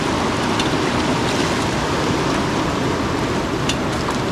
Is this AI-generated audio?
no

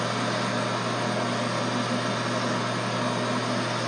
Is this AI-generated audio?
no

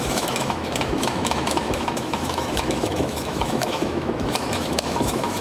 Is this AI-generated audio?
yes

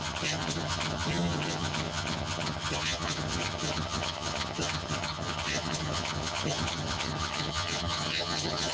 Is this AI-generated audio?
yes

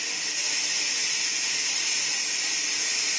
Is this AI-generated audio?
no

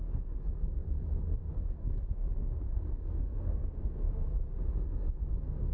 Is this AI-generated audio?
yes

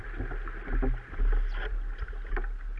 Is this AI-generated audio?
no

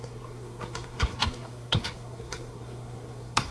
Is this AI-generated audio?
yes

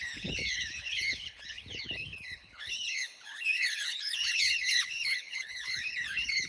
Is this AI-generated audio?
yes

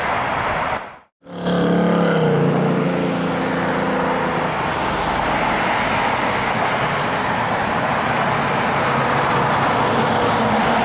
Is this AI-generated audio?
no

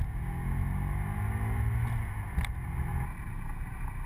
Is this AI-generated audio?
no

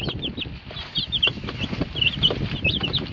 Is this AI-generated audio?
yes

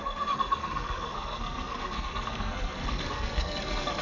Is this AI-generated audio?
yes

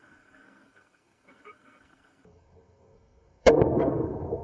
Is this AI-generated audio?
yes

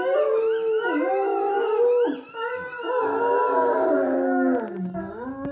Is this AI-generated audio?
no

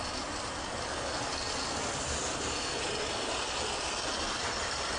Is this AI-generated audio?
no